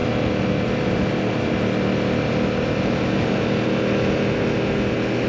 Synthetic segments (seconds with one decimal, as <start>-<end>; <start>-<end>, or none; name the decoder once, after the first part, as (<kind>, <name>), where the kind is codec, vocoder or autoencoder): none